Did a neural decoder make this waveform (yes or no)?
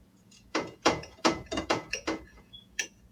yes